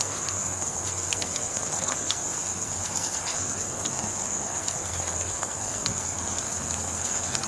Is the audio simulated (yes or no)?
yes